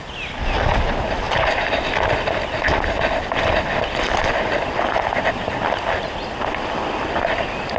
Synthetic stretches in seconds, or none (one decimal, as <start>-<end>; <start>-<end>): none